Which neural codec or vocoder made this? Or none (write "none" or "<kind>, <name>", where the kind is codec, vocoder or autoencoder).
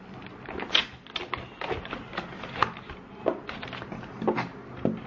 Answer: none